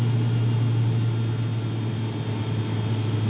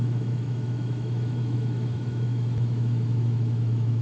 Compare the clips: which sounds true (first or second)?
first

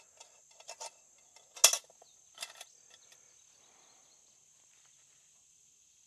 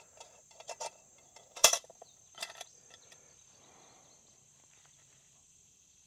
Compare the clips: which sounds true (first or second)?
first